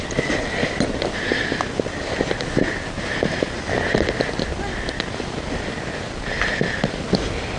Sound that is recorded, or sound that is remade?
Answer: recorded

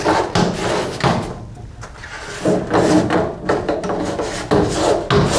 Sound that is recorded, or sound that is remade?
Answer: recorded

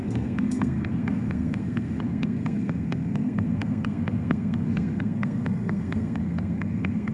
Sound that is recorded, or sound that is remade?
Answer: remade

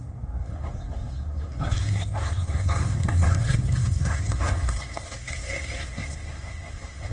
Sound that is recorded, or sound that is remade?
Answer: remade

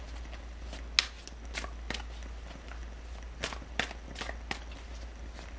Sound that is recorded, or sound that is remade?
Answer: recorded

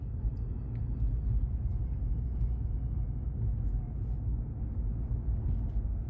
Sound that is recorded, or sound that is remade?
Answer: recorded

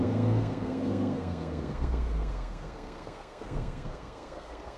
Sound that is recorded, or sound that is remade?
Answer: remade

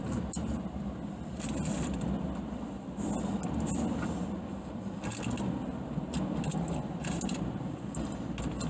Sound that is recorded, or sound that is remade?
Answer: recorded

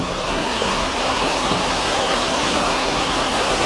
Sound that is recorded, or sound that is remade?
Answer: remade